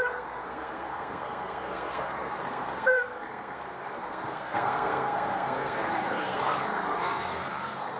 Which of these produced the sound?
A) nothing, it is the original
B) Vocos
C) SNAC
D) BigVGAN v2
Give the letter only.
C